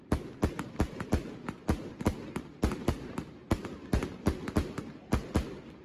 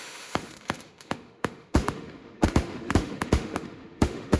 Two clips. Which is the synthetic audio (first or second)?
second